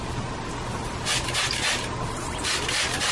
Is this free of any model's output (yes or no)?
yes